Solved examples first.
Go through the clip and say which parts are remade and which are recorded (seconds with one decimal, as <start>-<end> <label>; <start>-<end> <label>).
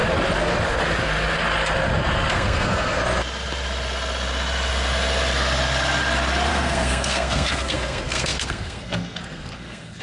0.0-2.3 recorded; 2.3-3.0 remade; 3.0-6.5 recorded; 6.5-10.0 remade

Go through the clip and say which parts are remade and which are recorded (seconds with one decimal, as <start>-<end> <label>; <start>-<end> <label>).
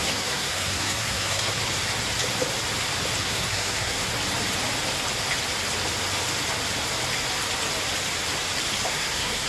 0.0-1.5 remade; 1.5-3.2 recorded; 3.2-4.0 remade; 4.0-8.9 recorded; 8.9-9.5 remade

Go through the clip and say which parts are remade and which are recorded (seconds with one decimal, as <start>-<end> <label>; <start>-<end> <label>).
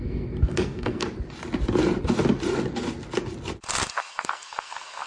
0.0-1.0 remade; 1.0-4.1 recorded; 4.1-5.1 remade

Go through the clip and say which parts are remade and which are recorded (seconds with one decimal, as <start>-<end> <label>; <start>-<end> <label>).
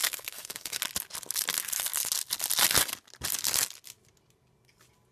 0.0-0.8 remade; 0.8-5.1 recorded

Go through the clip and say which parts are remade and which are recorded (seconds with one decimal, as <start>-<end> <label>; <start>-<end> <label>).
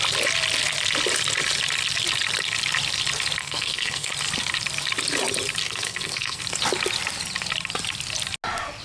0.0-3.4 recorded; 3.4-4.1 remade; 4.1-5.6 recorded; 5.6-6.4 remade; 6.4-8.8 recorded